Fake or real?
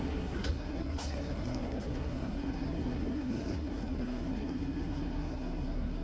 fake